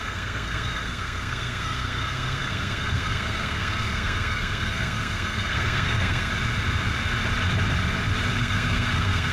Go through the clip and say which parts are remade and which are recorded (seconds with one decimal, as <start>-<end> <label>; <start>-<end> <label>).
0.0-6.3 remade; 6.3-8.4 recorded; 8.4-9.3 remade